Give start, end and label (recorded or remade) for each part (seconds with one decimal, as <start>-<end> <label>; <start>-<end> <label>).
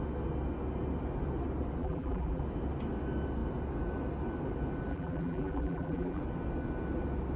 0.0-1.8 recorded; 1.8-2.4 remade; 2.4-4.9 recorded; 4.9-6.2 remade; 6.2-7.4 recorded